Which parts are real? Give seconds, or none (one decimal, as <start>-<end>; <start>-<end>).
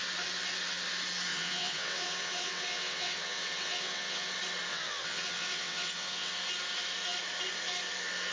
0.0-1.3; 4.3-4.7; 6.3-8.3